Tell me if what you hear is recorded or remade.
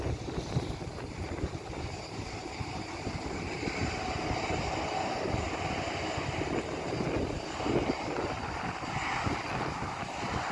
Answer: recorded